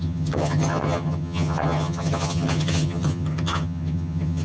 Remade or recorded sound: remade